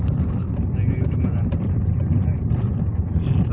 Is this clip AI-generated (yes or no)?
no